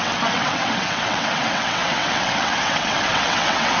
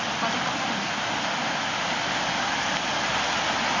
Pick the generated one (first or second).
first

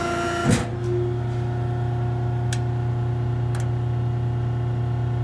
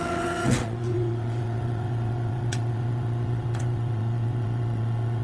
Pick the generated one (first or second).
second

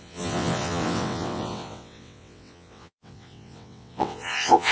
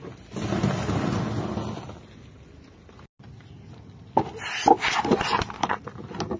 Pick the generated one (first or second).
first